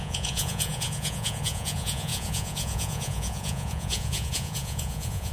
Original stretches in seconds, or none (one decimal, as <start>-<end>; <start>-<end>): none